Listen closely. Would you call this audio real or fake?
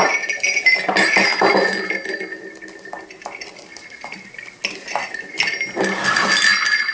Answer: real